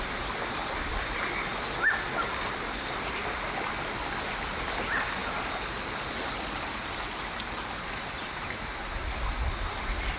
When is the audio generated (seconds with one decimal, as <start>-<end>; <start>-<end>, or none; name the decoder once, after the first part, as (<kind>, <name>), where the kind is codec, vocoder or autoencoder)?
none